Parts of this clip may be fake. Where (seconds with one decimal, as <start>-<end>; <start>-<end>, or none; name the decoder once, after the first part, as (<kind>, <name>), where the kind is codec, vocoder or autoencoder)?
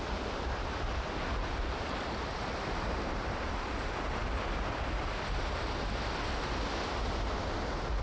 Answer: none